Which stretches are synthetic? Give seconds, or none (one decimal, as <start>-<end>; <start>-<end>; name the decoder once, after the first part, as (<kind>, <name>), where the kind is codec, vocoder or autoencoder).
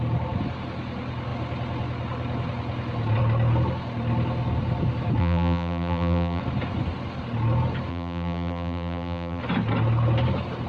5.2-6.4 (vocoder, BigVGAN v2); 7.9-9.4